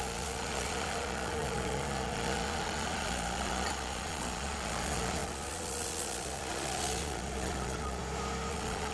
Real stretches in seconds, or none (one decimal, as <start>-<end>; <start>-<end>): 8.0-8.5